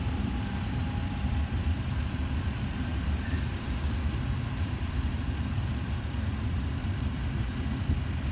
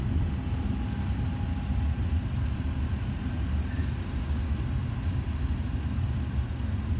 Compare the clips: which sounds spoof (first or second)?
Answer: first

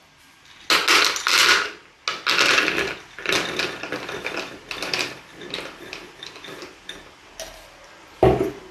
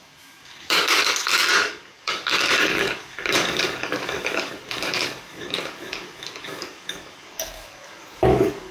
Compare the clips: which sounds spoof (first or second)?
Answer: second